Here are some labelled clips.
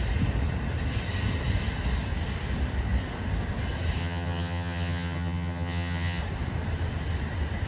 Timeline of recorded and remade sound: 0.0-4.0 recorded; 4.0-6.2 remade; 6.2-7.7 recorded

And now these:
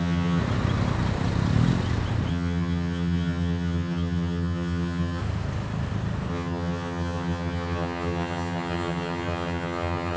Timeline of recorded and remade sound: 0.0-0.4 remade; 0.4-2.3 recorded; 2.3-5.2 remade; 5.2-6.3 recorded; 6.3-10.2 remade

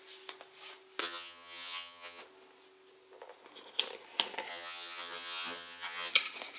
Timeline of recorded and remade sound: 0.0-1.0 recorded; 1.0-2.2 remade; 2.2-4.5 recorded; 4.5-6.1 remade; 6.1-6.6 recorded